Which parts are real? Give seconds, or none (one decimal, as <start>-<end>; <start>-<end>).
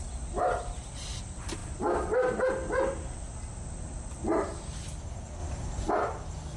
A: 0.0-6.6